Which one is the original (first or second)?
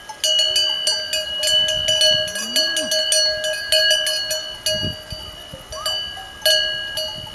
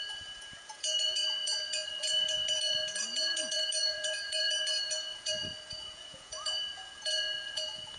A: first